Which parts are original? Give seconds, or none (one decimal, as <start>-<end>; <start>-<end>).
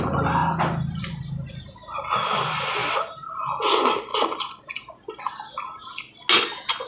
0.0-6.9